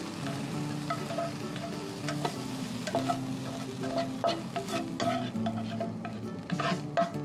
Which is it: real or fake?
real